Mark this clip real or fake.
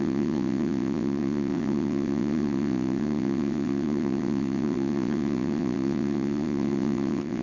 fake